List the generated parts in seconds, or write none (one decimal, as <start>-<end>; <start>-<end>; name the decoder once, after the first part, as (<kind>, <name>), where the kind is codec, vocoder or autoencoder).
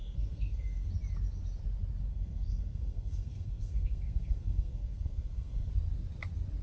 0.0-0.9 (codec, SNAC); 2.1-5.7